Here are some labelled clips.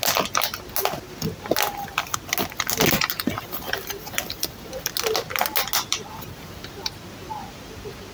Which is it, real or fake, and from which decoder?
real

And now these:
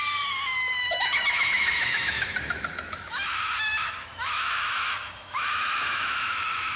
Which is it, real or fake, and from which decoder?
fake, autoencoder, DAC-VAE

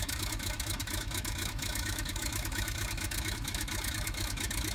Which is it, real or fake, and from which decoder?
fake, autoencoder, DAC-VAE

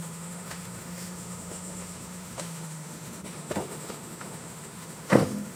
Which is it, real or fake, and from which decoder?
fake, autoencoder, DAC-VAE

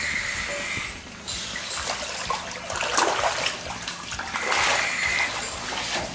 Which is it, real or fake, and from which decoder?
real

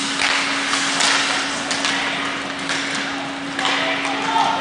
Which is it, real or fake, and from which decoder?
real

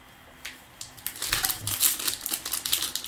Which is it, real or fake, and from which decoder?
real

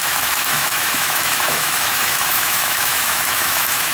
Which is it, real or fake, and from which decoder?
fake, autoencoder, DAC-VAE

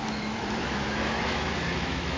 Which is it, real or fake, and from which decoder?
fake, autoencoder, DAC-VAE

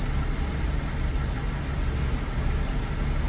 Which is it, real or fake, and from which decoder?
real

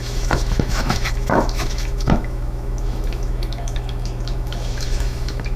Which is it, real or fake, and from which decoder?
fake, autoencoder, DAC-VAE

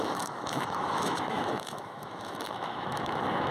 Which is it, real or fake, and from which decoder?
fake, autoencoder, DAC-VAE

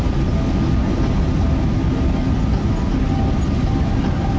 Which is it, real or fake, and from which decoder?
real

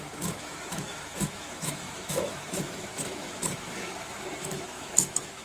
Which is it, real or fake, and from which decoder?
fake, autoencoder, DAC-VAE